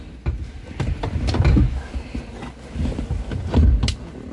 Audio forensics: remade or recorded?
recorded